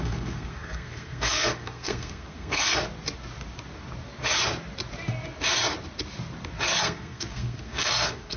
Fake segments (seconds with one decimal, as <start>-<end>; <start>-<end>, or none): 0.0-2.6; 6.8-8.4